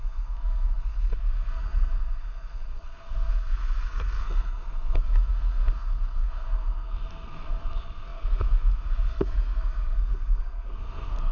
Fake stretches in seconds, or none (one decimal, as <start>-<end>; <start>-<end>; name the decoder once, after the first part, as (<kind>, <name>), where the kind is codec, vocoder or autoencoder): 0.0-11.3 (codec, SNAC)